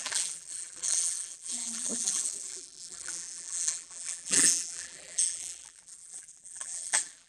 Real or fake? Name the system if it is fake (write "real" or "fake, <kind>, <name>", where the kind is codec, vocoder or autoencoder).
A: fake, vocoder, BigVGAN v2